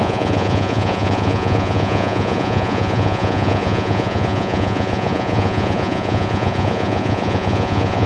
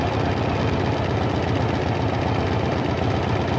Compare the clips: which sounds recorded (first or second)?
second